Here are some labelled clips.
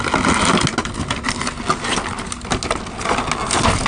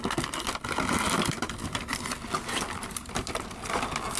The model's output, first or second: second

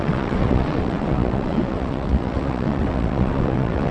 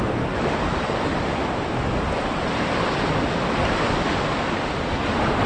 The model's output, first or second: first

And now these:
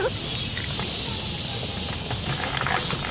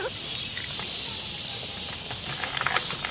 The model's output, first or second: second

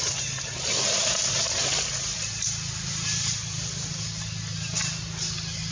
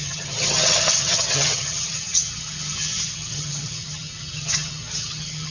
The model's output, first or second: second